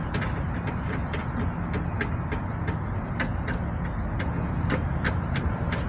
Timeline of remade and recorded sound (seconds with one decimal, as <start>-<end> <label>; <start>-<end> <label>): 0.0-5.9 recorded